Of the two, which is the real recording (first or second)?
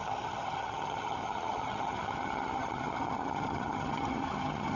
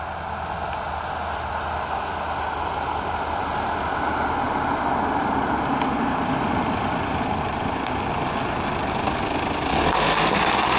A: second